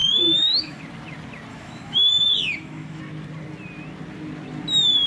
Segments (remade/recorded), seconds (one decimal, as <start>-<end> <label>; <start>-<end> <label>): 0.0-0.8 remade; 0.8-1.5 recorded; 1.5-3.0 remade; 3.0-5.1 recorded

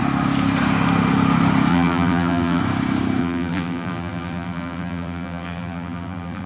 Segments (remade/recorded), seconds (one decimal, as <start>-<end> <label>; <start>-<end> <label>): 0.0-1.7 recorded; 1.7-2.6 remade; 2.6-3.2 recorded; 3.2-6.5 remade